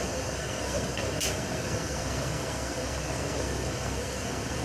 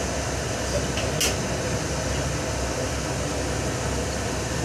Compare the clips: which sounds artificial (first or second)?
first